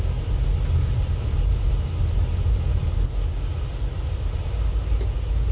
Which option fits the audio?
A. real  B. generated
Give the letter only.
A